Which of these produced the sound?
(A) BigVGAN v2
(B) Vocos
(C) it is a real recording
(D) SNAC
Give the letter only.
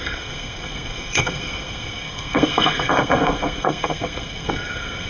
D